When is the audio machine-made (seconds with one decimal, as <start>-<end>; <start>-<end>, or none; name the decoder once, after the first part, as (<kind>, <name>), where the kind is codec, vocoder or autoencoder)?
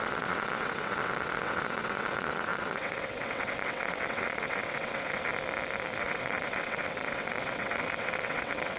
0.0-5.3 (vocoder, WaveNeXt); 6.0-8.8